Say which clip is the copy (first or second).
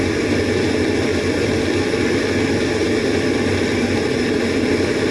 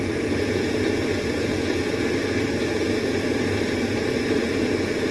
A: second